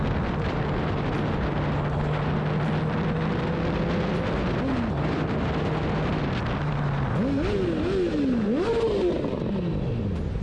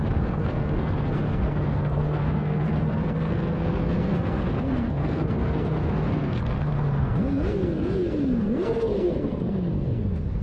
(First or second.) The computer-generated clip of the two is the second